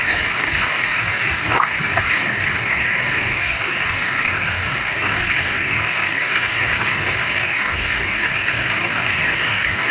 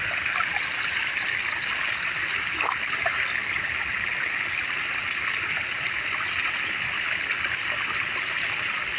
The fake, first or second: first